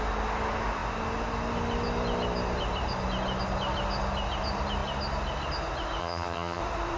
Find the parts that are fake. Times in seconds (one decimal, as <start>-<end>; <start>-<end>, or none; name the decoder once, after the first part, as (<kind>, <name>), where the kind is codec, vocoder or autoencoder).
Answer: 6.0-6.6 (vocoder, HiFi-GAN)